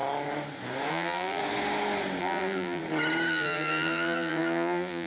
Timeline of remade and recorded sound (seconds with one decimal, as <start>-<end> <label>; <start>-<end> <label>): 0.0-0.9 recorded; 0.9-1.4 remade; 1.4-2.2 recorded; 2.2-2.8 remade; 2.8-3.3 recorded; 3.3-5.1 remade